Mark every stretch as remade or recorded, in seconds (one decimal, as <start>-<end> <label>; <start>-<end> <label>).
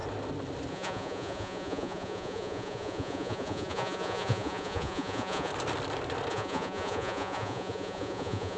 0.0-0.7 recorded; 0.7-5.5 remade; 5.5-6.3 recorded; 6.3-8.6 remade